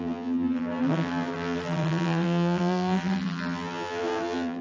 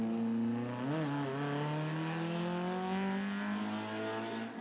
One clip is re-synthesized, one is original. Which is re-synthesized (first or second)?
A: first